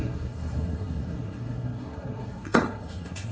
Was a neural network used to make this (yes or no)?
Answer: yes